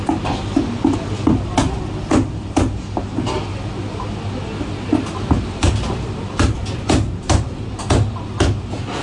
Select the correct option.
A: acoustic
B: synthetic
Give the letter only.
A